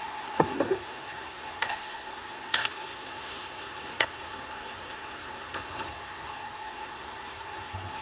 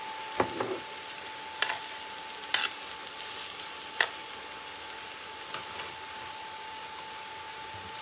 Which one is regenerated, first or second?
first